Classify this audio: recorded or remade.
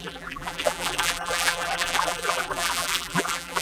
remade